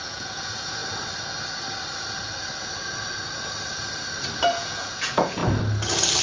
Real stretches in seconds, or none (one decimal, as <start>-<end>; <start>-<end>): 0.8-4.5; 5.4-6.2